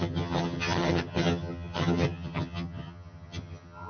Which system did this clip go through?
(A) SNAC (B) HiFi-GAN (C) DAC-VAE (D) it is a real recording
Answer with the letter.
B